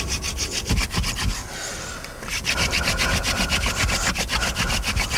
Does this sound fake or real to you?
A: real